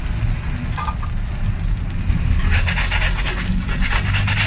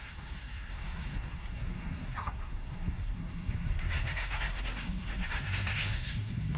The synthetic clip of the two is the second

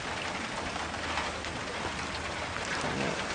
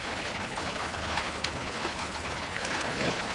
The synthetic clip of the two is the second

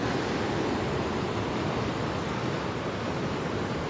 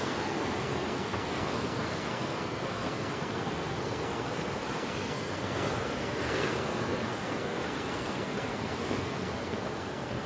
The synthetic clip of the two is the second